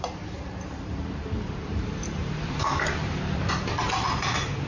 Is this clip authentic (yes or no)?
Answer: no